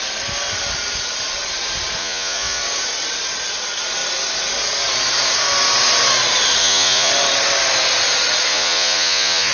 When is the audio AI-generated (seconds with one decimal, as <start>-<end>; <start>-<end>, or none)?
2.0-2.6; 6.6-7.1; 8.5-9.5